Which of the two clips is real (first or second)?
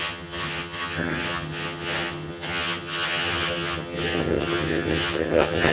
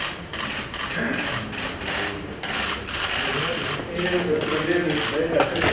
second